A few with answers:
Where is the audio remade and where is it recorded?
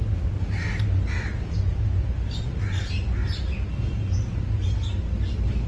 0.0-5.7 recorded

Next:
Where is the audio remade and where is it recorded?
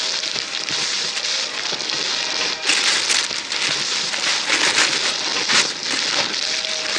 0.0-7.0 recorded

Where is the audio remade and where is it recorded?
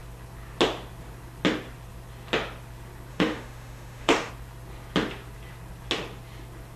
0.0-3.1 recorded; 3.1-4.3 remade; 4.3-6.8 recorded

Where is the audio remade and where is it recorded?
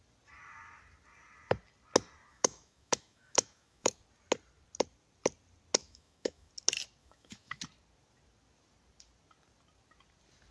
0.0-2.3 recorded; 2.3-4.0 remade; 4.0-5.8 recorded; 5.8-6.5 remade; 6.5-7.0 recorded; 7.0-7.6 remade; 7.6-10.5 recorded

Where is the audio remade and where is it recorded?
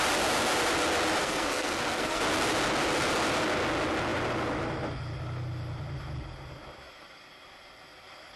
0.0-1.2 recorded; 1.2-2.2 remade; 2.2-8.4 recorded